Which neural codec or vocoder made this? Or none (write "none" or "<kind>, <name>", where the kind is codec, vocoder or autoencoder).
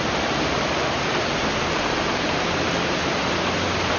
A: none